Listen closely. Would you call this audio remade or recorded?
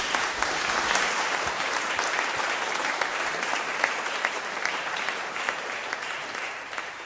remade